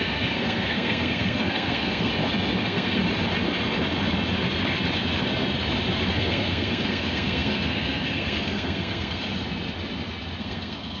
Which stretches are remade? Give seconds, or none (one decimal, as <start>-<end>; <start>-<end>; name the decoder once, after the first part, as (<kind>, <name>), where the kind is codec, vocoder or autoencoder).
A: 0.0-2.1 (codec, SNAC); 2.6-3.0; 6.1-9.3; 10.4-11.0